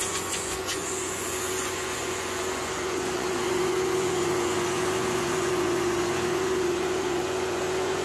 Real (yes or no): no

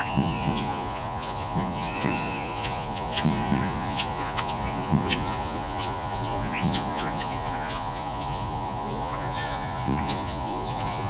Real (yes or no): no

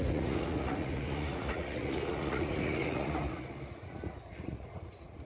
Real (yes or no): no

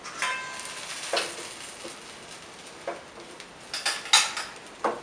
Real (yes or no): yes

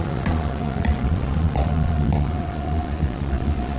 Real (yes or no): no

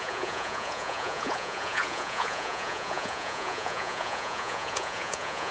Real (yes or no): no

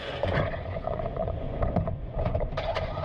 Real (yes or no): no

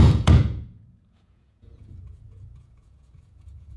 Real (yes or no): no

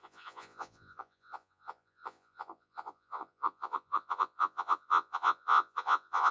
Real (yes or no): no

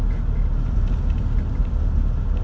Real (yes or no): yes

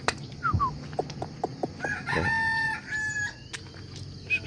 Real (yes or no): yes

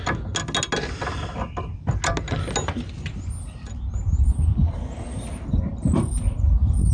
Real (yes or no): yes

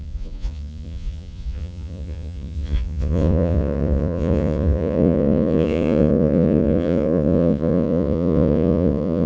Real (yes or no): no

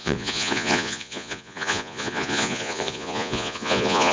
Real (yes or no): no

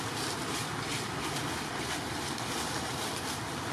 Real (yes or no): yes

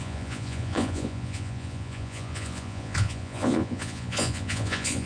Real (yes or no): no